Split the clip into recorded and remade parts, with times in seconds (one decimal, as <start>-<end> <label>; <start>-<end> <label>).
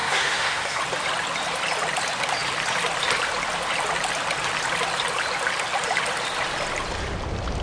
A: 0.0-0.8 remade; 0.8-7.6 recorded